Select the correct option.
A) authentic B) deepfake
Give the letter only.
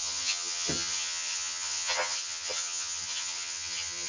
B